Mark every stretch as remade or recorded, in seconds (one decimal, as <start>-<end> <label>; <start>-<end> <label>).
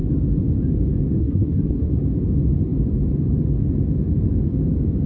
0.0-1.2 recorded; 1.2-1.9 remade; 1.9-5.1 recorded